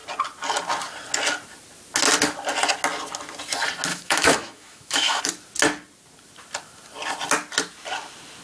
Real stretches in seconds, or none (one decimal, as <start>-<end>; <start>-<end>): 0.0-3.9; 5.2-8.4